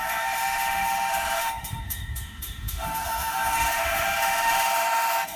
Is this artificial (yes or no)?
yes